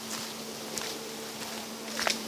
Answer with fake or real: real